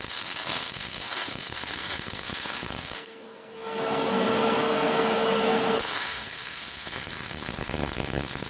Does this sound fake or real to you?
fake